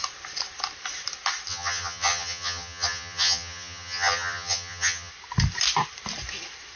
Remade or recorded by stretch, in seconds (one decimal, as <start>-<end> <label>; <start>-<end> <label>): 0.0-1.5 recorded; 1.5-5.1 remade; 5.1-6.8 recorded